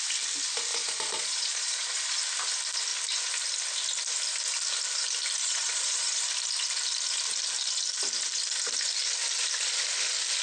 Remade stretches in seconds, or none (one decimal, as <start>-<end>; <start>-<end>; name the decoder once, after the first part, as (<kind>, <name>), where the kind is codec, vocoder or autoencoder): 0.7-2.2 (vocoder, Vocos); 5.4-6.2